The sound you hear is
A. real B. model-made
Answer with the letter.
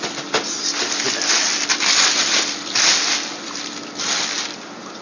A